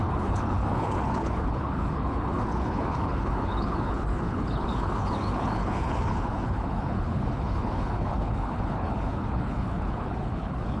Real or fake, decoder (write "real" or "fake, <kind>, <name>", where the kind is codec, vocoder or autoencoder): fake, codec, HILCodec